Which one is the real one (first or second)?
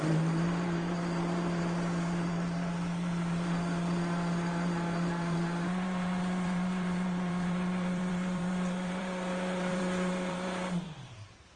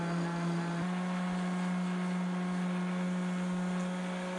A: second